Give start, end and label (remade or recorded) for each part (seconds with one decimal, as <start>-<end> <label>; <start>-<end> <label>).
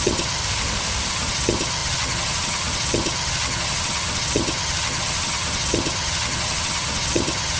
0.0-0.4 remade; 0.4-1.1 recorded; 1.1-7.6 remade